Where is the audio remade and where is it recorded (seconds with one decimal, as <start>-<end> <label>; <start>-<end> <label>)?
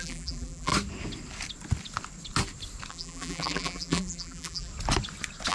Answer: 0.0-0.7 remade; 0.7-2.9 recorded; 2.9-4.7 remade; 4.7-5.5 recorded